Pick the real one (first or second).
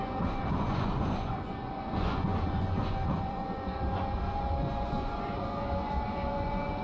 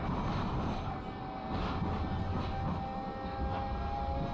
second